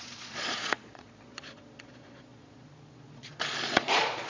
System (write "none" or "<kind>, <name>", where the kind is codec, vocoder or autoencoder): vocoder, Vocos